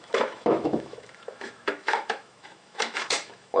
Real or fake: fake